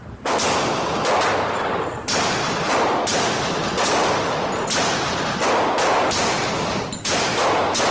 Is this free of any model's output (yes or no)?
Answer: yes